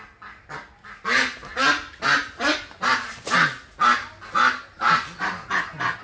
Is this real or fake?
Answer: real